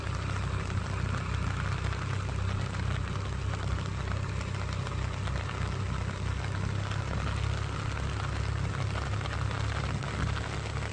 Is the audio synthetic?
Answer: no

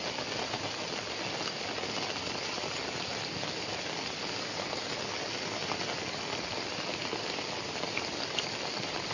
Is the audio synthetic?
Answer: no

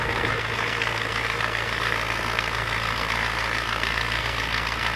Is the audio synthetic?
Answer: yes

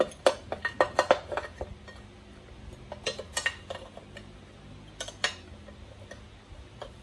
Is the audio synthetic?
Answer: no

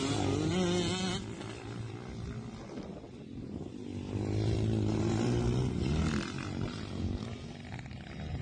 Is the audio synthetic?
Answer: no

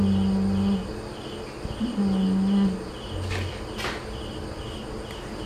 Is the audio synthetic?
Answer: no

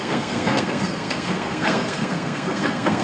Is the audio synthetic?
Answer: yes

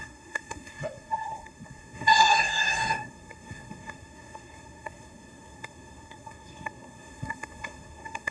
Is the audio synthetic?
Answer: yes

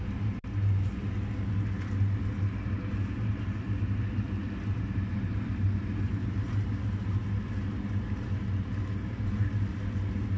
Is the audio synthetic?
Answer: no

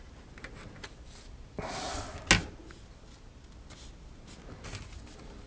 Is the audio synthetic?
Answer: no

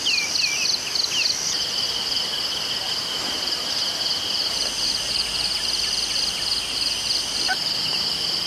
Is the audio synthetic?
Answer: no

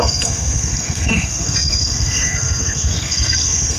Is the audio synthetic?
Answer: yes